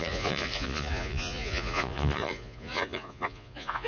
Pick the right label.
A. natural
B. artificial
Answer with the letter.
B